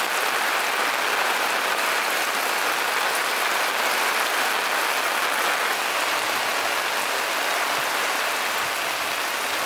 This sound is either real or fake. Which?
real